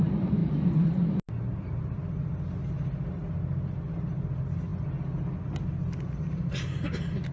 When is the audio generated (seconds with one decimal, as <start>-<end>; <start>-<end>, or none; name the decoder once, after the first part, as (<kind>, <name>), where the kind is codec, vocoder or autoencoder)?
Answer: none